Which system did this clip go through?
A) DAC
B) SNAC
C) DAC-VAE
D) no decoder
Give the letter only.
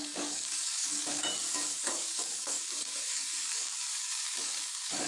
A